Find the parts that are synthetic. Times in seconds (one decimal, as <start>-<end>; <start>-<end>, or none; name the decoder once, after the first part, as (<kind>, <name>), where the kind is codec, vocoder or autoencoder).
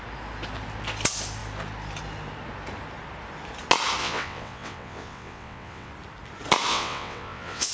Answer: 4.0-5.9 (vocoder, WaveNeXt); 6.7-7.7